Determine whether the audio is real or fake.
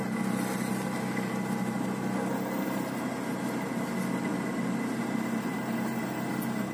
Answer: real